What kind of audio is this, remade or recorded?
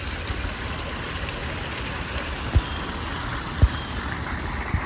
recorded